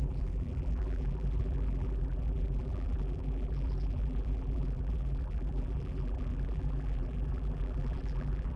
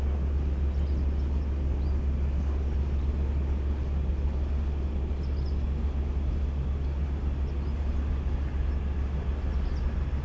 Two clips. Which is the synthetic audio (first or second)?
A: first